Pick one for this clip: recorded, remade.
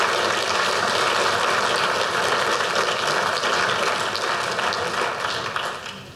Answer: recorded